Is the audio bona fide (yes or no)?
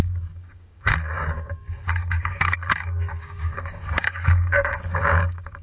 no